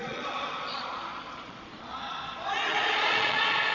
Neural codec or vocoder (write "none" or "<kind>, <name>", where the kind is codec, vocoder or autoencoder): vocoder, Vocos